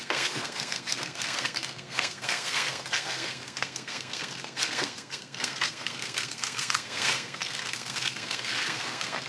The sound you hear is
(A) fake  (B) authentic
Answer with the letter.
A